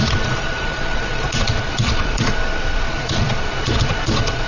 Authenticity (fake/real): fake